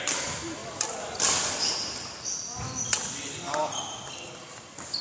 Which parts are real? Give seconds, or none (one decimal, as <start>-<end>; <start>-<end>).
0.0-5.0